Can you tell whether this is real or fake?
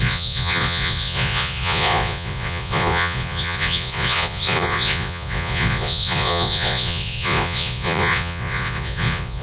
fake